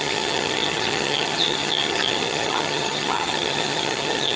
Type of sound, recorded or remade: remade